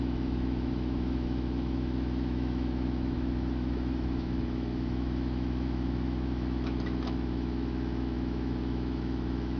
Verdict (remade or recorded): remade